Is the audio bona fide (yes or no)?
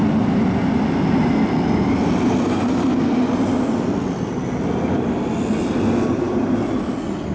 yes